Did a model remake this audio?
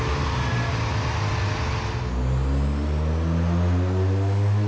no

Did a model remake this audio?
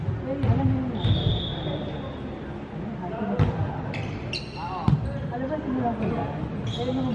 no